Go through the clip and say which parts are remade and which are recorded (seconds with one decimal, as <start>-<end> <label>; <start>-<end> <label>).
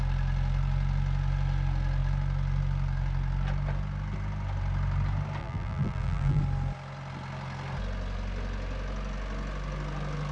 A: 0.0-5.4 recorded; 5.4-6.4 remade; 6.4-10.3 recorded